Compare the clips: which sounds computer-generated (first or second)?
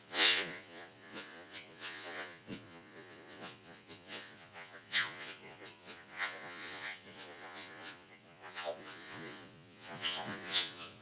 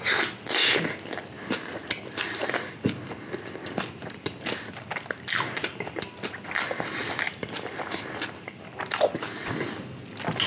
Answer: first